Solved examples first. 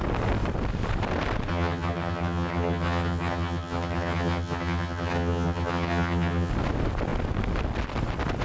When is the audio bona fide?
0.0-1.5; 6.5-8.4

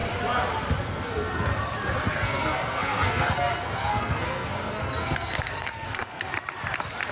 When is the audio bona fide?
0.0-0.8; 1.5-2.1; 6.3-7.1

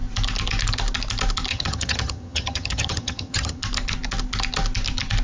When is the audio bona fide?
0.0-1.5; 3.6-5.2

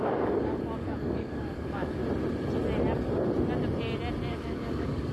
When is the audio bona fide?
2.0-4.3